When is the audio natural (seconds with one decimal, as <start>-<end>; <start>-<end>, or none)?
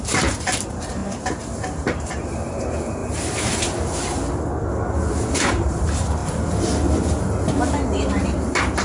3.0-5.2; 6.2-8.1